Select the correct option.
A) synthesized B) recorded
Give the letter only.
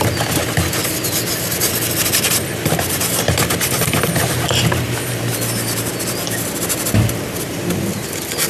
B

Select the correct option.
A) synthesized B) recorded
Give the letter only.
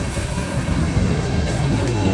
A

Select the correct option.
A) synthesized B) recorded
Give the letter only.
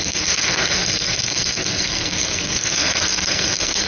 A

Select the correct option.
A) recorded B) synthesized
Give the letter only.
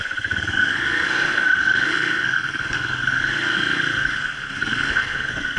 B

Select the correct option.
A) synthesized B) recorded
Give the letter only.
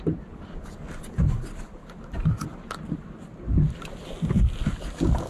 B